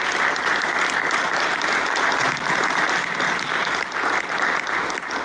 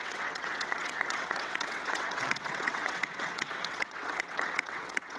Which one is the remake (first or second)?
second